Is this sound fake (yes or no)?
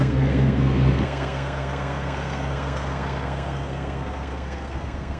yes